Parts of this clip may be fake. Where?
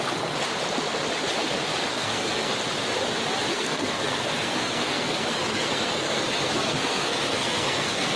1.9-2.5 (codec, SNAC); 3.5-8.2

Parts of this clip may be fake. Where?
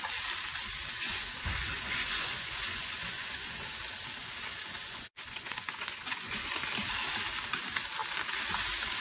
0.9-3.8 (vocoder, Vocos); 4.2-6.5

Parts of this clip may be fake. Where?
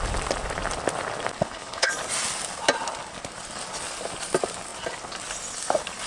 1.4-1.9 (codec, HILCodec)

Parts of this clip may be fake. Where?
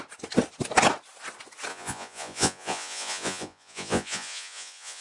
1.7-5.0 (vocoder, Vocos)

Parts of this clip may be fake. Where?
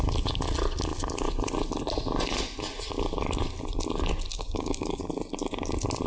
4.3-5.0 (codec, DAC)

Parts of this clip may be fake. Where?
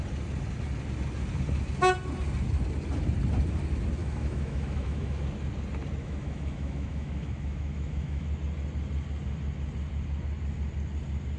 4.0-5.2 (autoencoder, DAC-VAE); 6.0-8.3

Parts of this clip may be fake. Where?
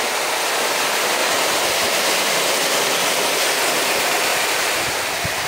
1.2-2.4 (vocoder, BigVGAN v2); 4.3-5.1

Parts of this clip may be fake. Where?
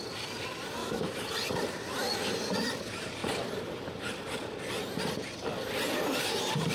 0.8-1.3 (autoencoder, DAC-VAE)